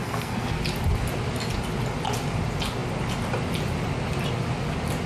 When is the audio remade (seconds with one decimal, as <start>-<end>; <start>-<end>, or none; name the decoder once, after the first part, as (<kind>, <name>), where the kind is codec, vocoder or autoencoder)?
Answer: 0.0-0.6 (codec, SNAC)